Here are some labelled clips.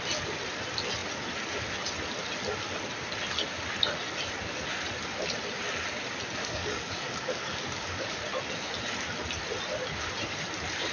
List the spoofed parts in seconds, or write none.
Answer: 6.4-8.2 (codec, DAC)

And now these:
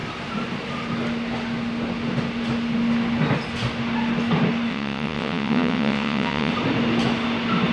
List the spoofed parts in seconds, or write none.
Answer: 4.7-6.5 (vocoder, WaveNeXt)